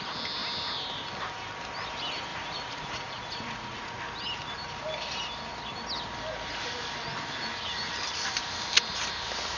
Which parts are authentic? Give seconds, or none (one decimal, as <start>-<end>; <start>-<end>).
0.0-2.3; 4.0-9.6